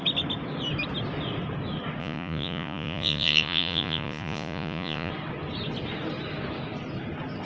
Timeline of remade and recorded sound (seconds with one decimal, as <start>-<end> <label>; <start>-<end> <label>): 0.0-2.0 recorded; 2.0-5.1 remade; 5.1-7.5 recorded